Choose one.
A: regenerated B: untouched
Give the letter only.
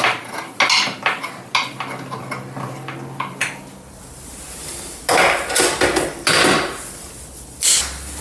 B